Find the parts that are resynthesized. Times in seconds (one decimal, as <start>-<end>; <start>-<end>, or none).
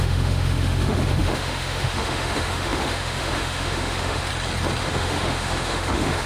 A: 0.0-4.3; 4.8-6.3